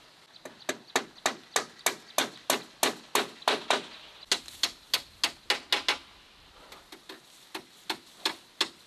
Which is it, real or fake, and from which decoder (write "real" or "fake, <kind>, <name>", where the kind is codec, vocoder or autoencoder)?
real